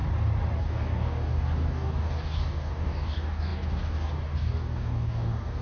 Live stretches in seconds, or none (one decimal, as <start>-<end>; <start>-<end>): 0.0-0.6